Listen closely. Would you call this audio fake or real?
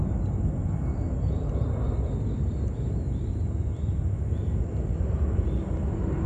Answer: real